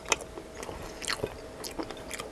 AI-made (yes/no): no